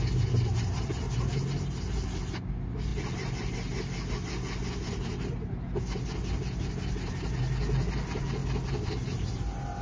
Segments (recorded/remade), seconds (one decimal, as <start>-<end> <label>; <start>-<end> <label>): 0.0-9.8 recorded